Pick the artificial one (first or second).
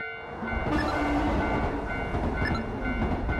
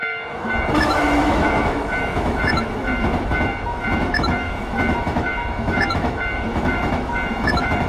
second